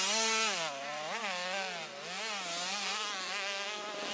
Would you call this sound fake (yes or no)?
no